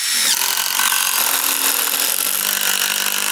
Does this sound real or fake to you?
real